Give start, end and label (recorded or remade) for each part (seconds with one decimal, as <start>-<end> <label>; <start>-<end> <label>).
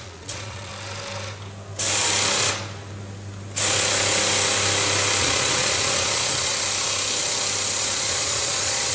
0.0-0.7 remade; 0.7-5.2 recorded; 5.2-6.5 remade; 6.5-7.8 recorded; 7.8-8.9 remade